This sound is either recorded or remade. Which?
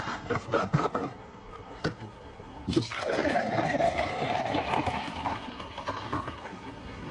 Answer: remade